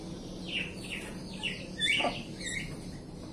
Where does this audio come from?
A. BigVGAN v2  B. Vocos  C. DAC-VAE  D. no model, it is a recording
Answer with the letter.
D